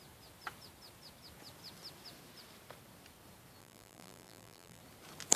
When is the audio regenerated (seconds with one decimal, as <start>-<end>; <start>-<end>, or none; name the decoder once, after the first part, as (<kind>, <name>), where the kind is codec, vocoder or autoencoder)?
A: 3.6-4.8 (vocoder, BigVGAN v2)